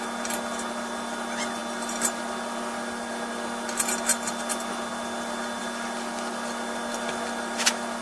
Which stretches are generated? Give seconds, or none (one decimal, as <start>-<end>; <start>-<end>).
none